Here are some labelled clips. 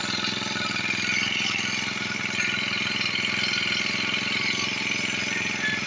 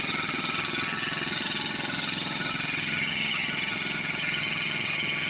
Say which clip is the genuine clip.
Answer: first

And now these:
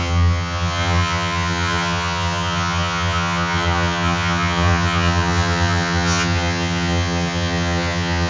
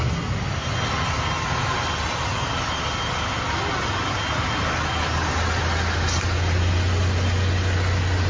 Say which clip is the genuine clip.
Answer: second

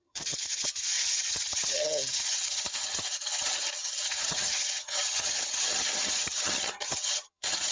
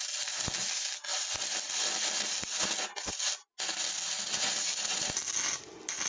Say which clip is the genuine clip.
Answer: second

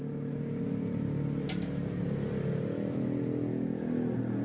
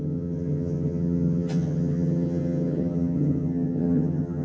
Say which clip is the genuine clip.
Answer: first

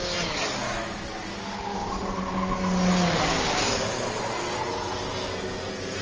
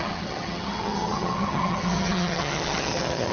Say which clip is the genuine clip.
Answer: first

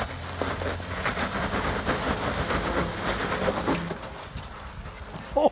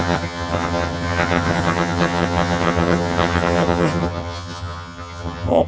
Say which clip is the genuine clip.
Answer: first